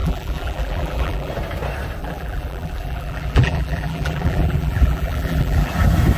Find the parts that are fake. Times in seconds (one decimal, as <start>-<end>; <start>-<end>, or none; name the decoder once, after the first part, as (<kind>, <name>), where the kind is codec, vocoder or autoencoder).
0.0-1.3 (vocoder, BigVGAN v2); 2.0-5.7